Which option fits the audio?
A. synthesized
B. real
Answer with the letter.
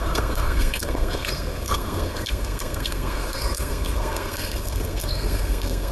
A